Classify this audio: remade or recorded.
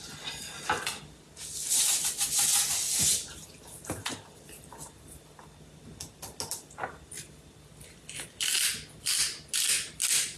recorded